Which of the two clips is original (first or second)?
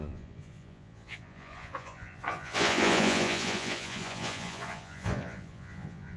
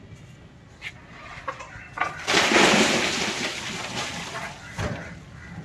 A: second